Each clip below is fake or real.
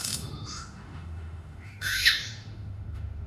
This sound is fake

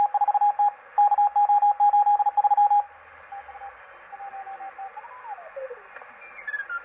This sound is real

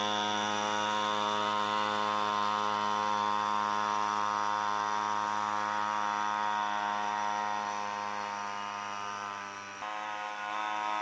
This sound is real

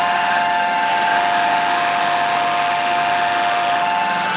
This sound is fake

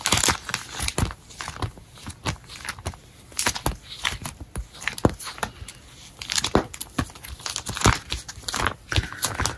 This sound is real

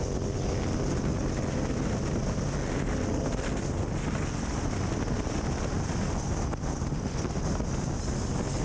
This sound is real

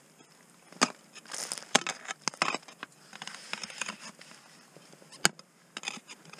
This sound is real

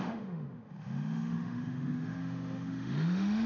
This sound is fake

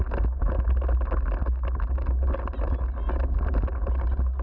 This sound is real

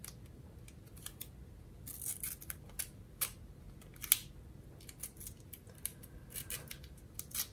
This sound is real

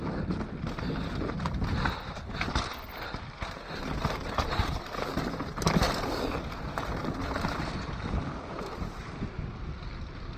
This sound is real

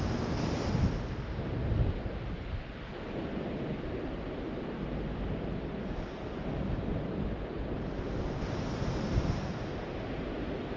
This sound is real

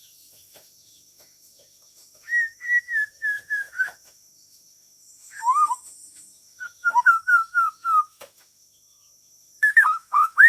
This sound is fake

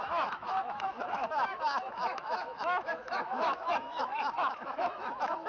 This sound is fake